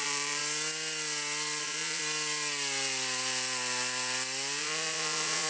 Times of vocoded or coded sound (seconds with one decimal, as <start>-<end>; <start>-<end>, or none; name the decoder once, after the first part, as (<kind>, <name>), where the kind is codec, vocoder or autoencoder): 0.0-0.4 (vocoder, Vocos); 1.6-2.0; 4.6-5.5